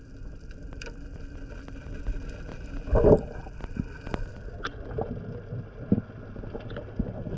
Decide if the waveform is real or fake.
real